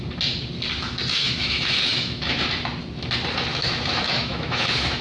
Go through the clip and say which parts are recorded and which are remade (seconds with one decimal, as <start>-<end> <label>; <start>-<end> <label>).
0.0-1.1 recorded; 1.1-2.4 remade; 2.4-3.5 recorded; 3.5-5.0 remade